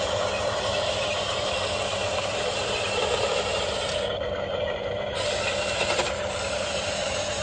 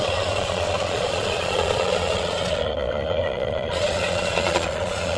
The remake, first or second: second